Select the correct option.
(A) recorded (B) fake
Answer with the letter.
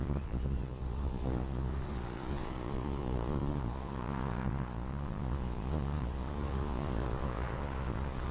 B